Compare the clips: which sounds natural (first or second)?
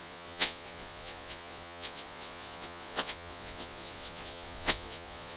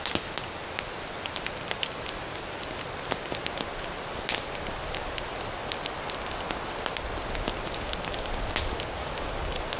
second